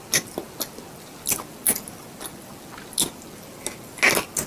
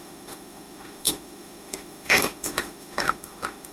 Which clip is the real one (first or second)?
first